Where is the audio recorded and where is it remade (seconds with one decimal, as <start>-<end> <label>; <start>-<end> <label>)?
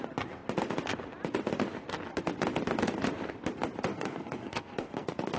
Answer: 0.0-3.9 recorded; 3.9-5.4 remade